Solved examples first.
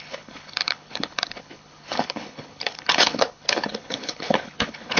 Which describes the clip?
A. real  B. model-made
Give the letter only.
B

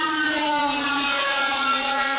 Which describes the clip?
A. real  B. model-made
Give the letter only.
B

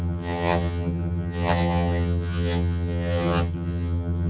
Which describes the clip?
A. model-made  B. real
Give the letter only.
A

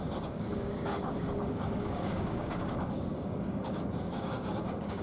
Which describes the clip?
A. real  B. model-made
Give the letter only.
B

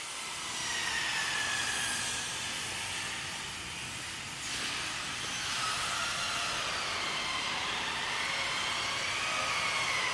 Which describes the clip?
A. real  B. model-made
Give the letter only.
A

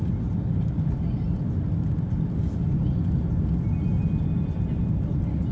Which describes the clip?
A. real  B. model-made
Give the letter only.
A